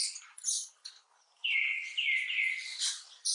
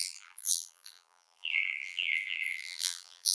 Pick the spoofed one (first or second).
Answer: second